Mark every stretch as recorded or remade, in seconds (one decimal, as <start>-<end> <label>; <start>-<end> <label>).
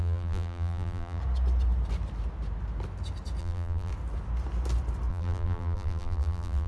0.0-1.2 remade; 1.2-3.4 recorded; 3.4-3.9 remade; 3.9-5.1 recorded; 5.1-6.7 remade